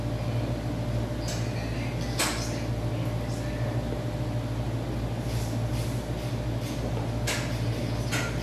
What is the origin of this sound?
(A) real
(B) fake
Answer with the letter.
A